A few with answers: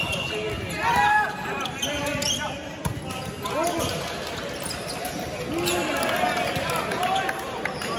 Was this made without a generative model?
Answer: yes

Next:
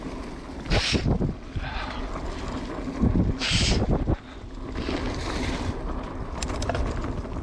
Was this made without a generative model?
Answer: yes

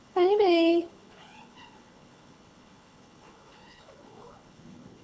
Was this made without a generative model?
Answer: no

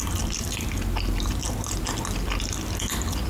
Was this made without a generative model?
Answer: yes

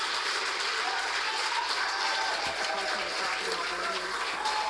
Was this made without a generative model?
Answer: yes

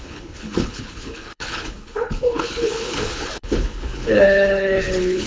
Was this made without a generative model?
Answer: no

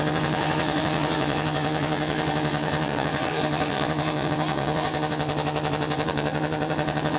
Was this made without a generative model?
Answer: no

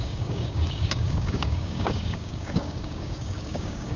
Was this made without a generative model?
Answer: no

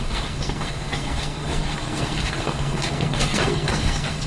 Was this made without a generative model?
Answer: no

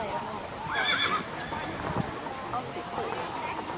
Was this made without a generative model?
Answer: yes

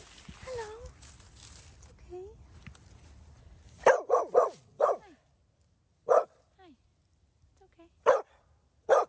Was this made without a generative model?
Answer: yes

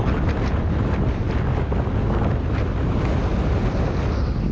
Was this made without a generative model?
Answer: yes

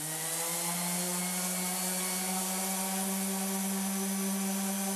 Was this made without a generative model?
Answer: yes